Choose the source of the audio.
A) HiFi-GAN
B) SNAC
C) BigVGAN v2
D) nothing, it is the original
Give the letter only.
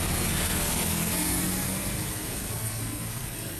B